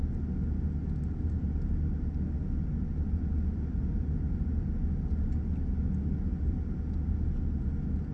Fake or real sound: real